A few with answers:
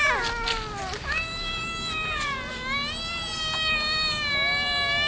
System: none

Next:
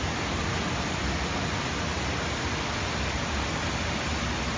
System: none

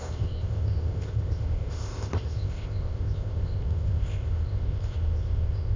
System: codec, ZipCodec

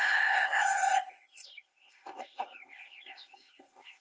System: codec, ZipCodec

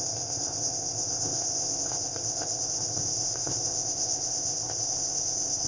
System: codec, ZipCodec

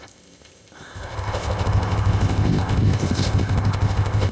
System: codec, ZipCodec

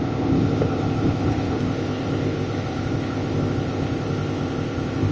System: codec, ZipCodec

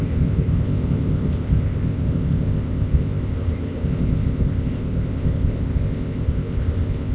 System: codec, ZipCodec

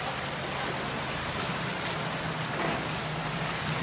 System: none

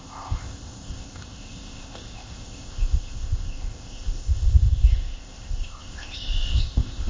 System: codec, ZipCodec